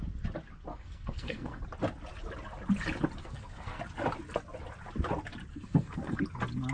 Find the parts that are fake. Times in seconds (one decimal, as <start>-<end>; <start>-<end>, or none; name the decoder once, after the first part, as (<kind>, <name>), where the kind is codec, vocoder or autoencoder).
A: 0.7-1.6 (codec, SNAC); 3.2-3.8; 5.5-6.2